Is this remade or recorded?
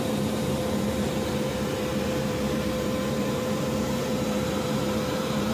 remade